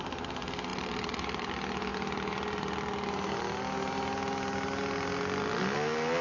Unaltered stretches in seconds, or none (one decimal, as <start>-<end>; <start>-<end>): 0.0-0.7; 1.5-6.2